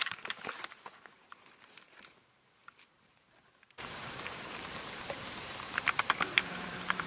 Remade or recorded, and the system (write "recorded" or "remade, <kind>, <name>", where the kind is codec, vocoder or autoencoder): remade, vocoder, BigVGAN v2